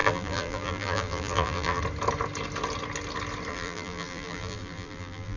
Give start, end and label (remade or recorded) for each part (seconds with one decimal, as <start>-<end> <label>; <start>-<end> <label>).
0.0-1.8 remade; 1.8-3.5 recorded; 3.5-5.4 remade